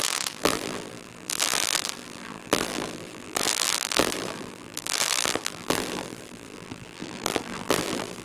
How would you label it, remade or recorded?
remade